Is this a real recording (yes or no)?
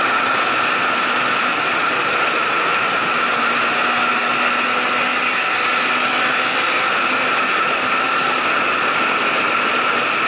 yes